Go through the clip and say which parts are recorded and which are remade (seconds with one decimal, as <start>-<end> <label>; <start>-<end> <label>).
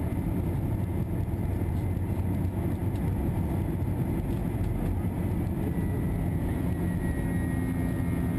0.0-8.4 recorded